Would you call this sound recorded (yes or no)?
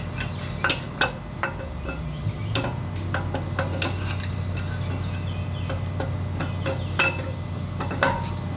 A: yes